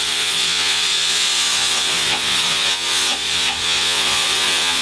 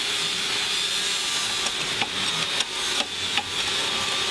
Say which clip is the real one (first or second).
second